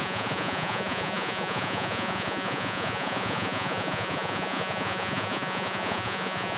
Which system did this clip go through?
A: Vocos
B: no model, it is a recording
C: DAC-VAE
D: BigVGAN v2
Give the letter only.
A